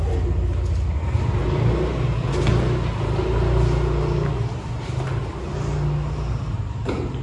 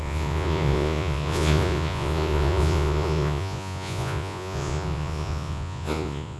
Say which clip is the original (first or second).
first